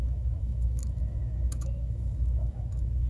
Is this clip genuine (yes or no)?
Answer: no